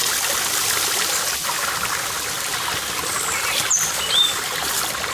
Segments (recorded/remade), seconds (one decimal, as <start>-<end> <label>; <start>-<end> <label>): 0.0-2.1 recorded; 2.1-2.5 remade; 2.5-3.7 recorded; 3.7-5.1 remade